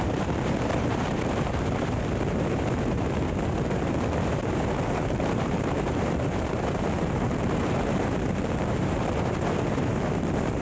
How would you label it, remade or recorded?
remade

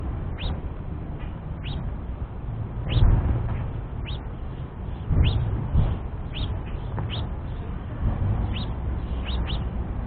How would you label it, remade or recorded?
remade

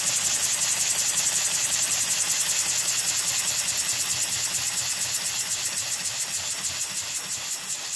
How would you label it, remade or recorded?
recorded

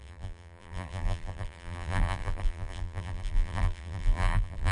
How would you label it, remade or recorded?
remade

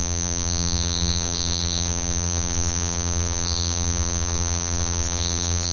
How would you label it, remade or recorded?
remade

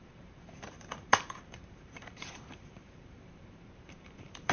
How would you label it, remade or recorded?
remade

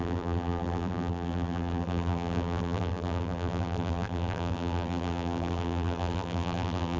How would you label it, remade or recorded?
remade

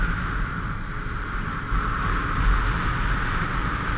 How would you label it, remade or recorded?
recorded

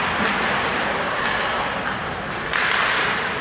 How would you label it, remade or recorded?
recorded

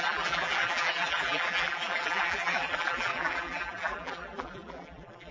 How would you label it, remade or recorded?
remade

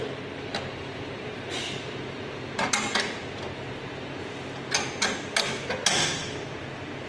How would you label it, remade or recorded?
recorded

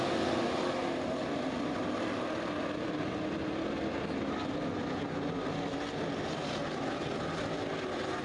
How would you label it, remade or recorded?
recorded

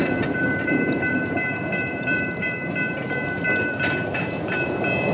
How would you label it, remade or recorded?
remade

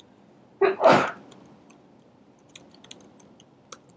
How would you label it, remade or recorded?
recorded